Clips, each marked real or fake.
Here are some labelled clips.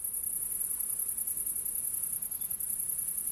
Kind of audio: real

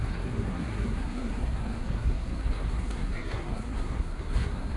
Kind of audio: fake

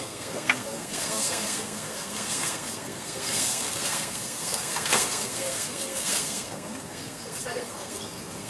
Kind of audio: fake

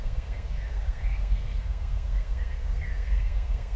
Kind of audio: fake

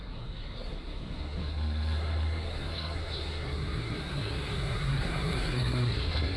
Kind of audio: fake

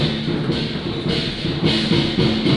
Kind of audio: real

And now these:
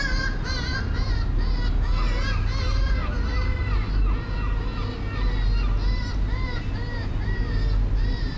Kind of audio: real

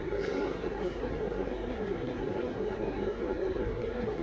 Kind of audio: fake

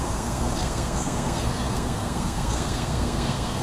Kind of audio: fake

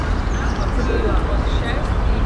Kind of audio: real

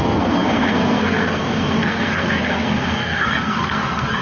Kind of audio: fake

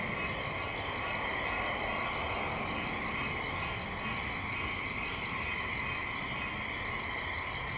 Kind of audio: real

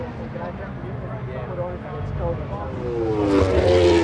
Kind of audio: real